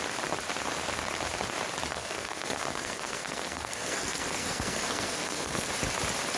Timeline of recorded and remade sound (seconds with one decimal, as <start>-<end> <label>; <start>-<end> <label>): 0.0-1.9 recorded; 1.9-5.7 remade; 5.7-6.4 recorded